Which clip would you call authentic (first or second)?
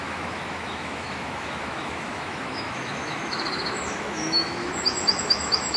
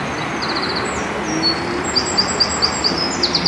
second